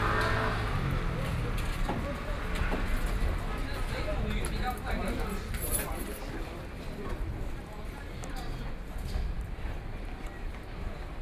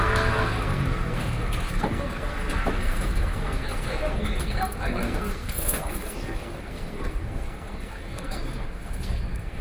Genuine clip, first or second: first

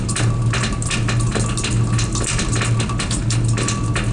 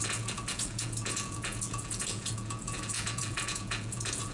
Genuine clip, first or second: first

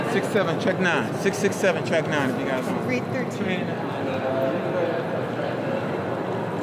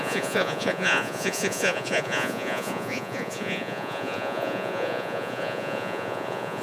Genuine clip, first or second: first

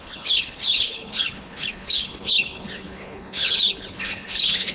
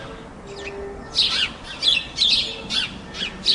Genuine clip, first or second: second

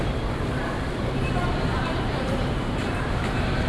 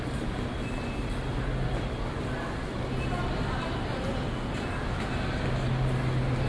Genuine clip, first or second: second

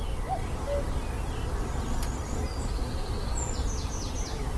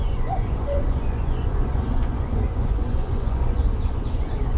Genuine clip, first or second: first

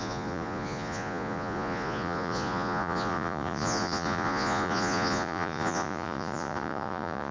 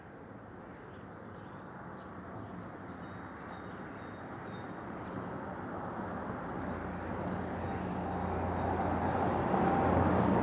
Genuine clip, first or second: second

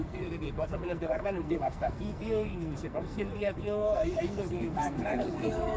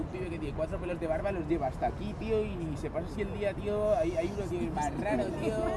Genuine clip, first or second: second